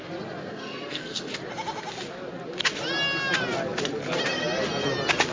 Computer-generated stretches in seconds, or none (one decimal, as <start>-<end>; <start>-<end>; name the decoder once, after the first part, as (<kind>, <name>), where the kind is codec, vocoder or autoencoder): 0.4-1.3 (codec, SNAC)